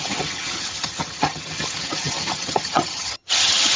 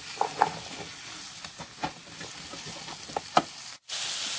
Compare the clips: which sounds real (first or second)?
second